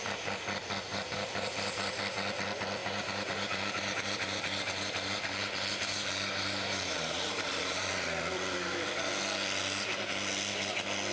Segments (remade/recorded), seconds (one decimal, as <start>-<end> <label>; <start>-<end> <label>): 0.0-0.9 recorded; 0.9-2.0 remade; 2.0-2.8 recorded; 2.8-7.9 remade; 7.9-11.1 recorded